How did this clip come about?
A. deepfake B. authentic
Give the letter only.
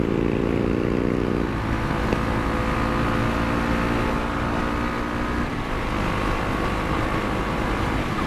B